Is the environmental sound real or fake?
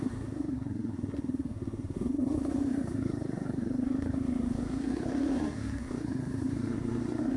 fake